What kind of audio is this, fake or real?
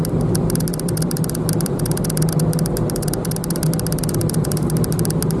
real